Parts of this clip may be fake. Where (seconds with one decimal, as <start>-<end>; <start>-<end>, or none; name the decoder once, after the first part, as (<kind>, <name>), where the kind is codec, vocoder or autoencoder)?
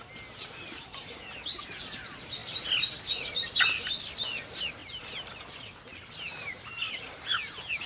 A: 2.4-3.5 (vocoder, BigVGAN v2); 4.8-5.4; 5.9-7.1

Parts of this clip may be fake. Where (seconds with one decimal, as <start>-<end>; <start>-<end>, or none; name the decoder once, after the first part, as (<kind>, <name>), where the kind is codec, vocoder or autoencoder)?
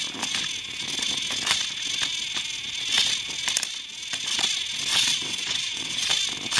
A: 4.9-6.1 (vocoder, WaveNeXt)